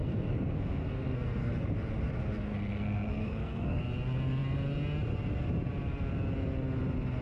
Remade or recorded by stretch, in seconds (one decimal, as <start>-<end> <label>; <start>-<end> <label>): 0.0-1.5 remade; 1.5-2.5 recorded; 2.5-3.8 remade; 3.8-7.2 recorded